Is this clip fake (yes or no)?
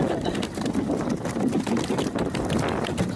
no